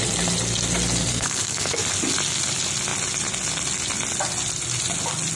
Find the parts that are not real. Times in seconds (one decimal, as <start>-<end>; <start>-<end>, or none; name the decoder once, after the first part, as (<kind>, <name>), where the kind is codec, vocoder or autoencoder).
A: 1.1-1.8 (codec, SNAC)